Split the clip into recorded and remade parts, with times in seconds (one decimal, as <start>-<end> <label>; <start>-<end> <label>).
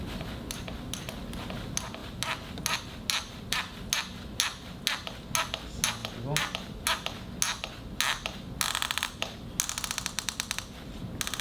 0.0-11.4 recorded